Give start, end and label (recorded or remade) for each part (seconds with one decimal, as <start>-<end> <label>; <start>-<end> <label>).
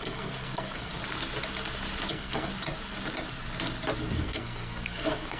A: 0.0-0.9 remade; 0.9-2.1 recorded; 2.1-2.5 remade; 2.5-4.0 recorded; 4.0-5.4 remade